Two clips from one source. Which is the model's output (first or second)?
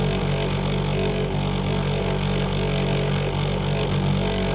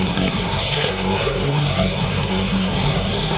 second